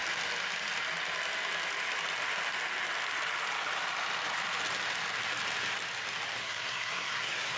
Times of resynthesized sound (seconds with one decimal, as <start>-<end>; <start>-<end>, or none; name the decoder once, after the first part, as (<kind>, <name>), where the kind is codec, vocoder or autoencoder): 6.4-7.6 (codec, SNAC)